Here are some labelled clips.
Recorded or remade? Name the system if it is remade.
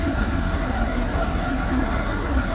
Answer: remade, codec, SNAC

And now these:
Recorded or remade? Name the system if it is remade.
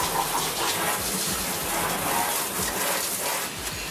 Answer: recorded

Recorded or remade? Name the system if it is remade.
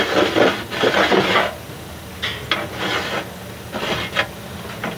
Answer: recorded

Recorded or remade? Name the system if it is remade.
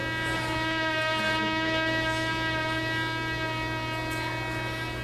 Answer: recorded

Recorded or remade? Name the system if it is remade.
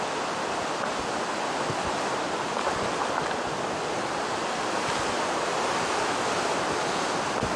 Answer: recorded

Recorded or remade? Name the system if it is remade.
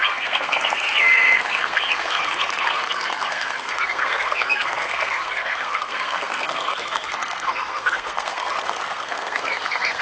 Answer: remade, codec, SNAC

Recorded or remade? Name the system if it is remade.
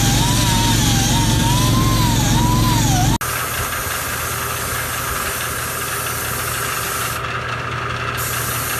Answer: recorded